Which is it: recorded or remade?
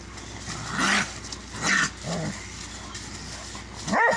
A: recorded